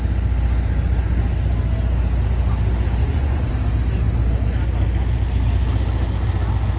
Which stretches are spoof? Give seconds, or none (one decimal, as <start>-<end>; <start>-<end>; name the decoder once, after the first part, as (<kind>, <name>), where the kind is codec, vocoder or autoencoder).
3.0-3.5 (vocoder, Vocos)